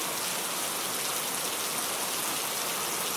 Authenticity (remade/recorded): recorded